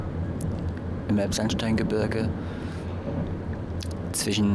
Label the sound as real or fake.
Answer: real